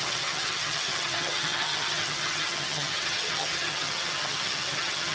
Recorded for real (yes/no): no